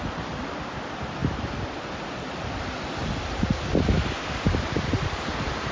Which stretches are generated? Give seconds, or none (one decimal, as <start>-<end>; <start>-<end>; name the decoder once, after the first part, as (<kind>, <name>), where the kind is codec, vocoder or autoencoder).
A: none